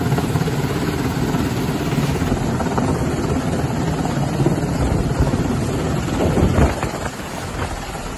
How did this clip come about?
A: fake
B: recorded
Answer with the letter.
B